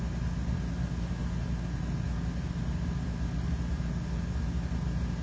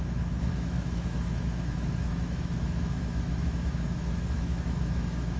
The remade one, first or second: second